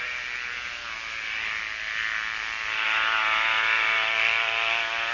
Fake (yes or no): no